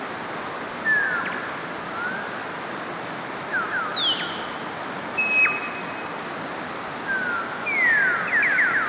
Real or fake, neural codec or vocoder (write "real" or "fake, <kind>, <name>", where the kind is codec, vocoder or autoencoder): real